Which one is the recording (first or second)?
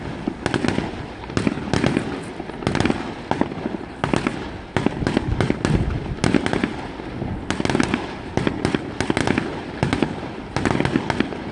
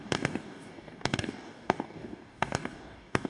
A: first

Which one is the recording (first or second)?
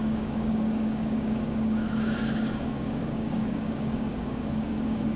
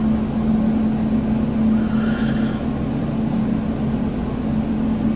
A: second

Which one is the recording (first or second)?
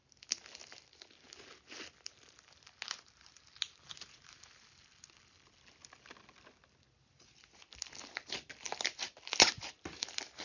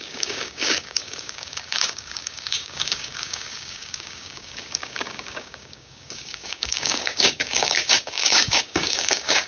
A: first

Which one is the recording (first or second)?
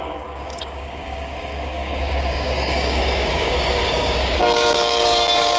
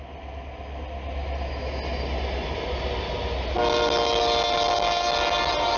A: second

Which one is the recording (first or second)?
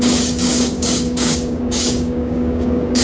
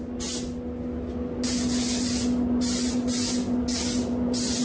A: second